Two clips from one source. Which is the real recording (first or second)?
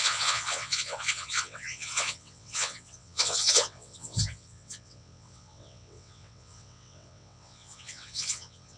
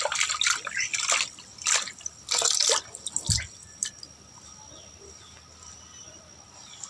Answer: second